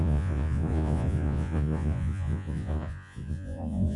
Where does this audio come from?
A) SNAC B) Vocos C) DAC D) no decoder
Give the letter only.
B